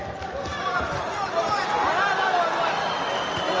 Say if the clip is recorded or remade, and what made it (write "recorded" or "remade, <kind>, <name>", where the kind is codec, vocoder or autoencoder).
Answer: recorded